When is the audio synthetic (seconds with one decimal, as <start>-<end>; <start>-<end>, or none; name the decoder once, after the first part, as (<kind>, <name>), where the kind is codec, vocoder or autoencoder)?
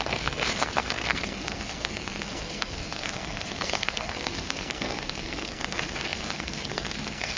0.0-7.4 (codec, SNAC)